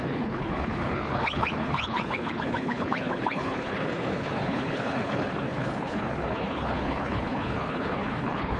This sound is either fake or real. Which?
fake